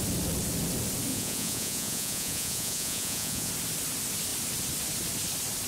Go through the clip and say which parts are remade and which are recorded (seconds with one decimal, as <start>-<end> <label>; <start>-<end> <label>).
0.0-1.1 recorded; 1.1-3.5 remade; 3.5-5.7 recorded